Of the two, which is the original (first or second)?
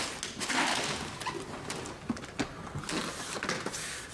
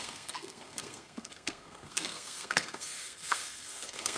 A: first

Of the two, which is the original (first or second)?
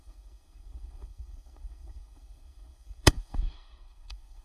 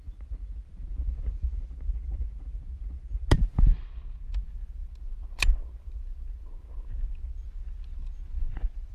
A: second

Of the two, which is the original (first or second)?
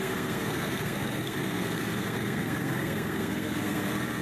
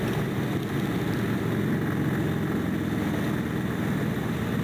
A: second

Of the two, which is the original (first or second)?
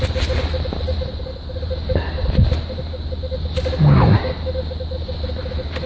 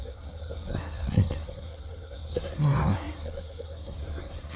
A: first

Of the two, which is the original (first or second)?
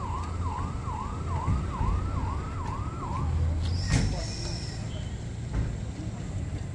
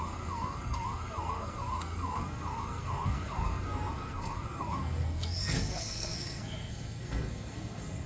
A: first